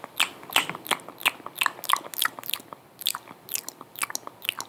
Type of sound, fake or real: real